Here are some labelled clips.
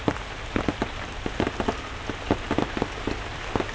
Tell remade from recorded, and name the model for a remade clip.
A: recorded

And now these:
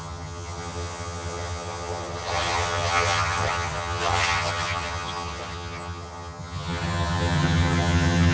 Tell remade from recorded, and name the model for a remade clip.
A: remade, vocoder, HiFi-GAN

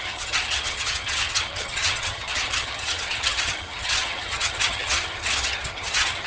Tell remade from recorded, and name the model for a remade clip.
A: remade, vocoder, HiFi-GAN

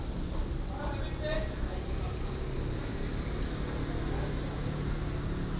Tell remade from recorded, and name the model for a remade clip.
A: recorded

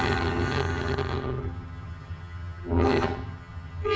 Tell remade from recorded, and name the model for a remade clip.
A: remade, vocoder, HiFi-GAN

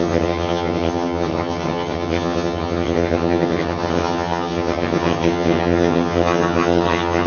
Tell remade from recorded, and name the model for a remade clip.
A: remade, vocoder, HiFi-GAN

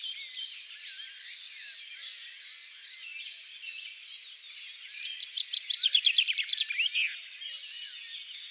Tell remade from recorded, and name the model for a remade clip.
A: recorded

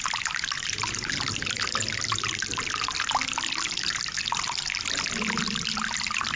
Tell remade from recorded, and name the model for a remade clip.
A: recorded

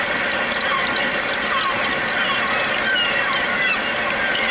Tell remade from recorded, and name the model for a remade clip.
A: recorded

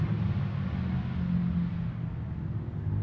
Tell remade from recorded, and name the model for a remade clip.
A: recorded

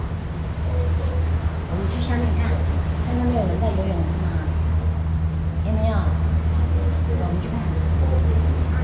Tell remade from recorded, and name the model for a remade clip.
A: recorded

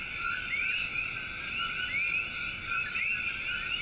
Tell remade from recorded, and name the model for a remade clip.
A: recorded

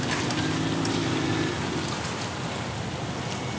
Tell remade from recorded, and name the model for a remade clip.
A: recorded